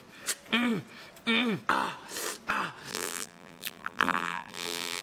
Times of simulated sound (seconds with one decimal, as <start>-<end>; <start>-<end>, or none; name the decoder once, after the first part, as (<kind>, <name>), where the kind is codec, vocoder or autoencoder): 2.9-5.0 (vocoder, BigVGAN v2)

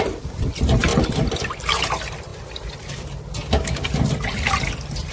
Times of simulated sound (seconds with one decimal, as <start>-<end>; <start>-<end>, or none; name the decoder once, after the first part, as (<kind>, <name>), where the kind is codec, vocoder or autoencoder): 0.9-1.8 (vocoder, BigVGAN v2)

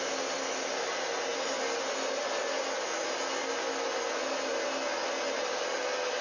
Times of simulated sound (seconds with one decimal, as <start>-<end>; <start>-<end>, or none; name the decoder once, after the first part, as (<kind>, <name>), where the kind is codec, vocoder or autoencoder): none